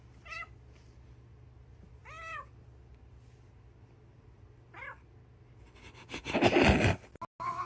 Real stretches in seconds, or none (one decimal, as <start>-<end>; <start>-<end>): 0.0-7.7